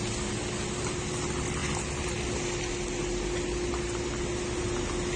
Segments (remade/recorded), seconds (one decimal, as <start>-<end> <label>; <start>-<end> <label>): 0.0-5.2 recorded